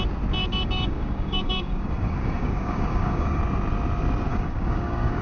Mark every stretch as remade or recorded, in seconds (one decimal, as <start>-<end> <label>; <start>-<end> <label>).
0.0-0.4 recorded; 0.4-3.4 remade; 3.4-4.3 recorded; 4.3-5.2 remade

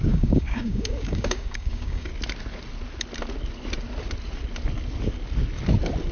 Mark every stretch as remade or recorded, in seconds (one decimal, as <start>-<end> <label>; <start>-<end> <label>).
0.0-2.1 remade; 2.1-6.1 recorded

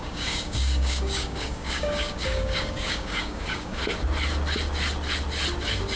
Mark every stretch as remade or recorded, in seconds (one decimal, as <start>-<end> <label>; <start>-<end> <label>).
0.0-3.8 remade; 3.8-6.0 recorded

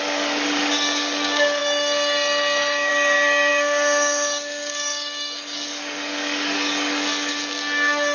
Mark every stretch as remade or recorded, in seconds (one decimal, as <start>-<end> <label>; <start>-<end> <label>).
0.0-8.1 remade